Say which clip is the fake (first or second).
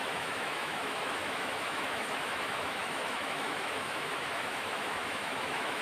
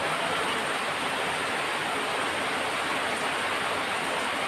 first